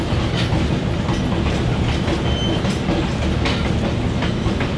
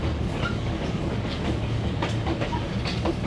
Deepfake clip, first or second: second